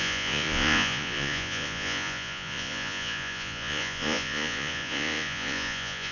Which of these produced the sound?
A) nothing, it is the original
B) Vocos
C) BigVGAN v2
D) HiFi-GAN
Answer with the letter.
B